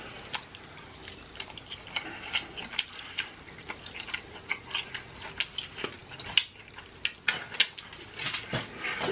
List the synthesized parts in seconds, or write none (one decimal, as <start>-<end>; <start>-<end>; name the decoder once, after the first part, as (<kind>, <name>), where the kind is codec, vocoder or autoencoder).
none